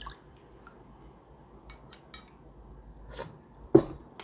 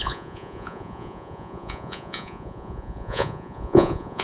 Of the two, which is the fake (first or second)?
second